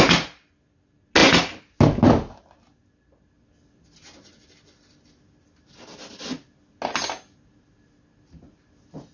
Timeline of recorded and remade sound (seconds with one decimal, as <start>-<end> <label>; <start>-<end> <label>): 0.0-9.1 recorded

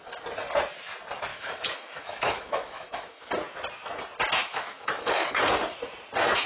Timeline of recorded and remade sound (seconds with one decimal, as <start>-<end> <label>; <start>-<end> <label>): 0.0-1.3 recorded; 1.3-3.3 remade; 3.3-4.4 recorded; 4.4-5.4 remade; 5.4-6.5 recorded